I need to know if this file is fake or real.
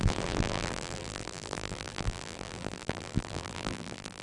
fake